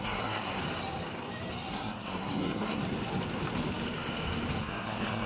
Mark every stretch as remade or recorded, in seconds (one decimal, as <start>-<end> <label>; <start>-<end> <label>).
0.0-0.6 remade; 0.6-1.7 recorded; 1.7-2.8 remade; 2.8-4.6 recorded; 4.6-5.3 remade